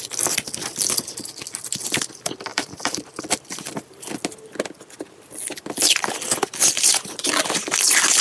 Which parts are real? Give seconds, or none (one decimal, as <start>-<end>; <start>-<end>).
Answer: 0.0-2.5; 3.2-6.6; 7.3-8.2